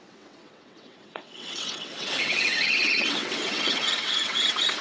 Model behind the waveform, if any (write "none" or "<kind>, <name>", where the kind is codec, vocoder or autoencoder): vocoder, WaveNeXt